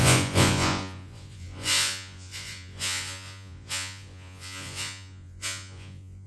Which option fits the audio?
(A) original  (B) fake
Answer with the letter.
B